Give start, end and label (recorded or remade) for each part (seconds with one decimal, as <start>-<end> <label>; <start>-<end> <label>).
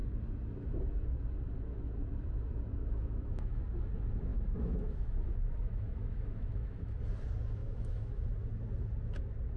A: 0.0-2.8 recorded; 2.8-3.6 remade; 3.6-4.3 recorded; 4.3-7.0 remade; 7.0-7.6 recorded; 7.6-8.2 remade; 8.2-9.6 recorded